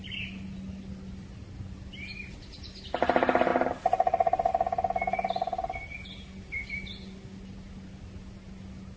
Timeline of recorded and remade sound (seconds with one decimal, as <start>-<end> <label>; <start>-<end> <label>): 0.0-9.0 recorded